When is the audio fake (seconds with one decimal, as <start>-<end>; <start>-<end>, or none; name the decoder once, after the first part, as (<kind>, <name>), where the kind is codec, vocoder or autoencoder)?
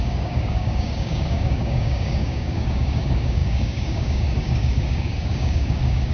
0.0-6.1 (codec, DAC)